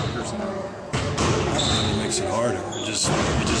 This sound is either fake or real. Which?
real